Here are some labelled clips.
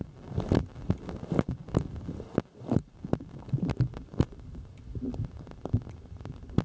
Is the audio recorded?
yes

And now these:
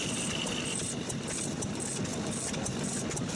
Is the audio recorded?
yes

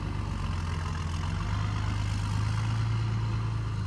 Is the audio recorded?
yes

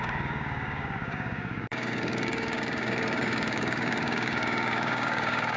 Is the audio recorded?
no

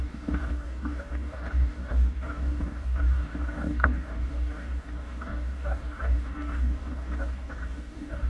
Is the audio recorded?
no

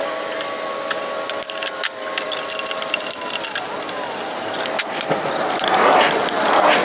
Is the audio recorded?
yes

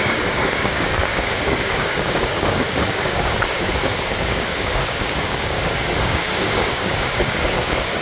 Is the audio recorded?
no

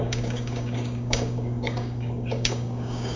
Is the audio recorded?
no